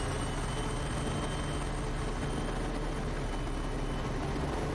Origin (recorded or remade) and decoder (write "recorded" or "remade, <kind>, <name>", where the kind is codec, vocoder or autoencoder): recorded